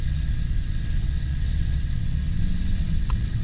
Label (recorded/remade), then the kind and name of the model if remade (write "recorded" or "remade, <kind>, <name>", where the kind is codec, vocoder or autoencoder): remade, vocoder, WaveNeXt